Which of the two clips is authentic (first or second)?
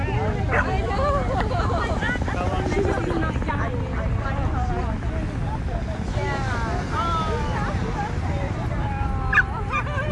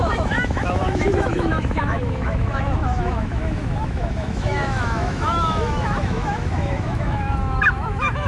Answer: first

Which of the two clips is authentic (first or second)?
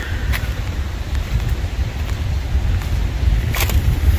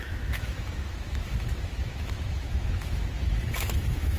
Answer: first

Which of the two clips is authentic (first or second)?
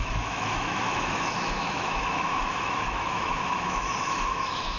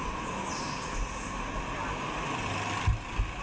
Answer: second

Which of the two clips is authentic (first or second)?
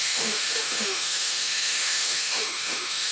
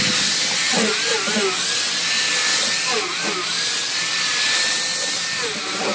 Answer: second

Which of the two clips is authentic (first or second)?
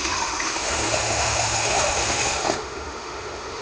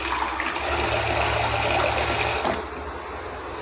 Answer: second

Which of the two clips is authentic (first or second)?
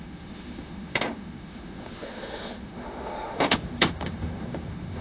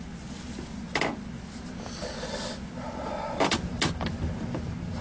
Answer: second